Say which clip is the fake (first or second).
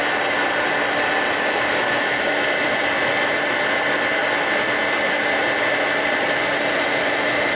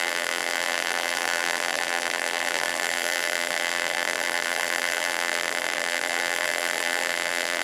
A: second